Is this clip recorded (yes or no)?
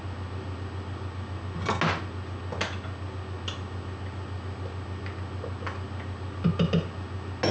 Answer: yes